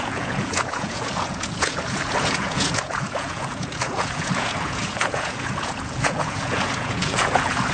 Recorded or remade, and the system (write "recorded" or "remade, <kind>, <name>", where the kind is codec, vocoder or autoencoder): remade, vocoder, Vocos